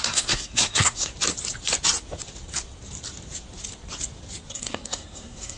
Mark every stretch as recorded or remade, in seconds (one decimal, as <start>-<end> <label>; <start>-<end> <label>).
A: 0.0-1.1 remade; 1.1-4.5 recorded; 4.5-5.6 remade

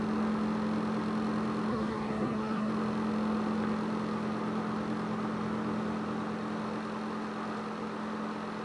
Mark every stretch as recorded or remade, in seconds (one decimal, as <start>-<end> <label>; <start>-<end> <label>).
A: 0.0-1.7 recorded; 1.7-2.7 remade; 2.7-8.6 recorded

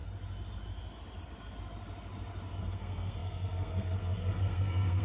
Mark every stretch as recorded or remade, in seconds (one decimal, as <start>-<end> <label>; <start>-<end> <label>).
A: 0.0-2.6 recorded; 2.6-5.0 remade

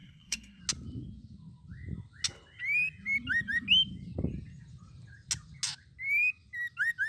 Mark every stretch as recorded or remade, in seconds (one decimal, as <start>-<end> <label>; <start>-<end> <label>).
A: 0.0-0.6 remade; 0.6-7.1 recorded

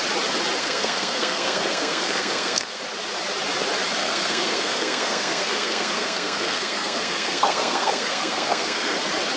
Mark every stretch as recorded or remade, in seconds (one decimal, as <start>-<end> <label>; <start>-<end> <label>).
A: 0.0-0.6 recorded; 0.6-2.8 remade; 2.8-4.0 recorded; 4.0-9.0 remade; 9.0-9.4 recorded

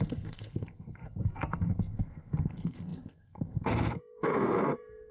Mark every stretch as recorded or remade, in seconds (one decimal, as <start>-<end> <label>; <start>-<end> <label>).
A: 0.0-5.1 remade

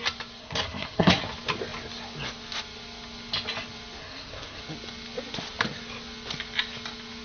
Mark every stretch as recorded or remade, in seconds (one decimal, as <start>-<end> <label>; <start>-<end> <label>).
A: 0.0-0.4 recorded; 0.4-1.2 remade; 1.2-4.0 recorded; 4.0-4.6 remade; 4.6-7.2 recorded